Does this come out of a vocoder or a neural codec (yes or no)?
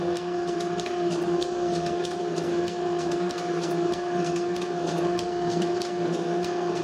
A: yes